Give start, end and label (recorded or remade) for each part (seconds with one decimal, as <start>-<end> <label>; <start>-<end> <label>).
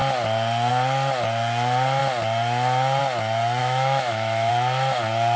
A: 0.0-3.6 recorded; 3.6-4.5 remade; 4.5-5.4 recorded